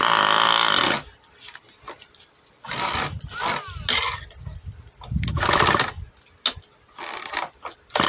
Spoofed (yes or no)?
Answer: no